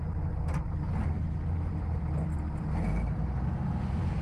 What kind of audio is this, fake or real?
real